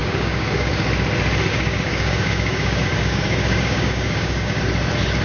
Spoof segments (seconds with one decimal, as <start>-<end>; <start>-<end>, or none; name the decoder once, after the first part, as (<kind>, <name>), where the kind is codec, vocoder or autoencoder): 0.0-0.7 (codec, DAC); 1.5-4.6